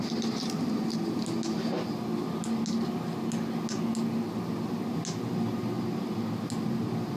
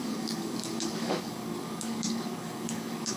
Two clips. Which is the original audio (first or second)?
first